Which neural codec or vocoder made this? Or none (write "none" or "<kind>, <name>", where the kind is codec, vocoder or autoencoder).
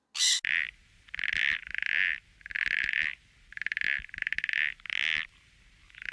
none